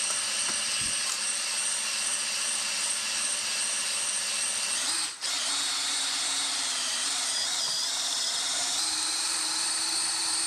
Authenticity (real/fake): fake